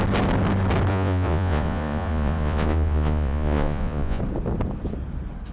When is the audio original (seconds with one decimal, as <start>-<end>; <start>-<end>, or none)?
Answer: 0.0-0.9; 4.2-5.5

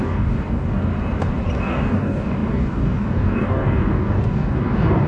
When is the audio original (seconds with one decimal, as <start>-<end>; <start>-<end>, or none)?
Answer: 0.9-1.6